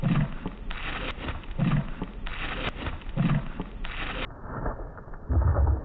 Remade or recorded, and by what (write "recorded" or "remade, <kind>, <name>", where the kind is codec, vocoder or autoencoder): recorded